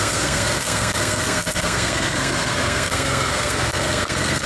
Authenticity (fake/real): fake